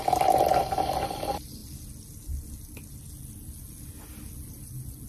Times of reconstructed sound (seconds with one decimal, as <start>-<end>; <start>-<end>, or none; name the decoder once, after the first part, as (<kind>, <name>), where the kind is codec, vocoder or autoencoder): none